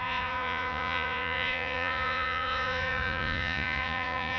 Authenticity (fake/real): fake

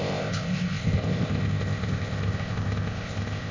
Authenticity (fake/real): fake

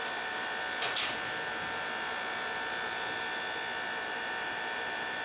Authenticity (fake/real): fake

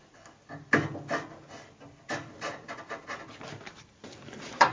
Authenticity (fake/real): real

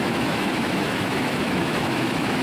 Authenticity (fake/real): fake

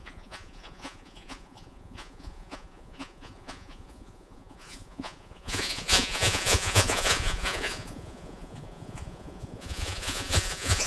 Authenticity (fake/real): fake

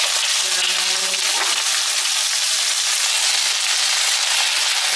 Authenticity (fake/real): real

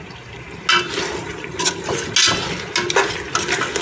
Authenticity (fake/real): real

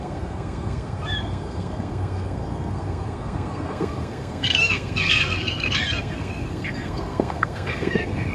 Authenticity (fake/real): fake